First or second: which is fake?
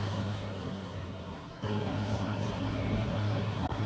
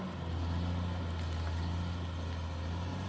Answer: first